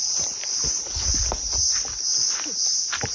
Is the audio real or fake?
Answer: real